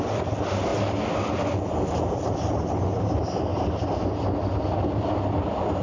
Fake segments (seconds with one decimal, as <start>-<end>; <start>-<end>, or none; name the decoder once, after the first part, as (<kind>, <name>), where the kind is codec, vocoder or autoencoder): 3.5-4.4 (vocoder, BigVGAN v2)